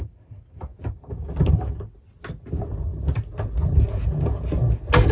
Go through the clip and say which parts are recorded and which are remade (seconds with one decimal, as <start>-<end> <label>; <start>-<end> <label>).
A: 0.0-5.1 recorded